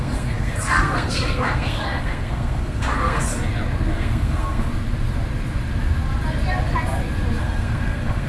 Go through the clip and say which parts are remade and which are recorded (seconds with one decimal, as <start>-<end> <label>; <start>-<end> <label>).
0.0-3.3 remade; 3.3-3.9 recorded; 3.9-4.7 remade; 4.7-7.4 recorded; 7.4-8.3 remade